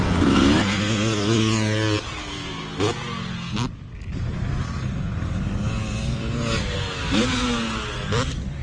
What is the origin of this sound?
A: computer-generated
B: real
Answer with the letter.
B